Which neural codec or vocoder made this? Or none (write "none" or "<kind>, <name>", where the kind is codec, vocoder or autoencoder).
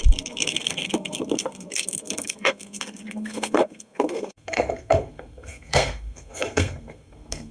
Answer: codec, SNAC